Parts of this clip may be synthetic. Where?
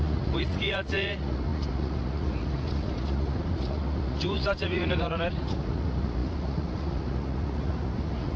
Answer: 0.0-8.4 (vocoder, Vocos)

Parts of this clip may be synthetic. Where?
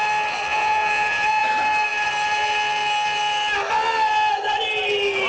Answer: 0.5-1.5 (vocoder, Vocos)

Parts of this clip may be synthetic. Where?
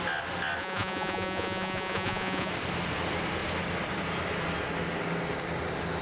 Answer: 0.6-2.5 (vocoder, Vocos)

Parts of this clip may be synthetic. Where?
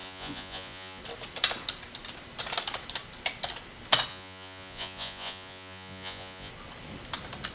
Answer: 0.0-1.0 (vocoder, Vocos); 4.1-6.5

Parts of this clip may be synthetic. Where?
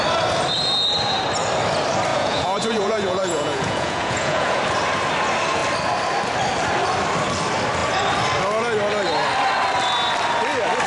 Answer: 2.1-4.6 (vocoder, Vocos)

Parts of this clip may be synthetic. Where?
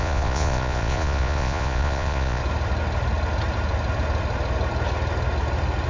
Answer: 0.0-2.4 (vocoder, Vocos)